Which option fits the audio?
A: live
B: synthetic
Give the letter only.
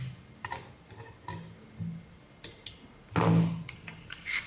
A